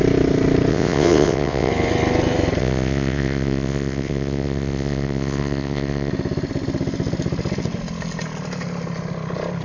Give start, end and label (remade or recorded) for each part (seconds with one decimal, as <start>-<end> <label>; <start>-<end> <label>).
0.0-0.7 recorded; 0.7-1.7 remade; 1.7-2.6 recorded; 2.6-6.1 remade; 6.1-9.6 recorded